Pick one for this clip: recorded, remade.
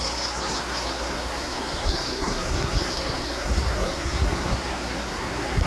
remade